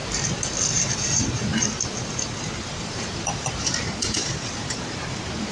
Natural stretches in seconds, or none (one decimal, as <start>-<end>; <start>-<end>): 0.0-0.9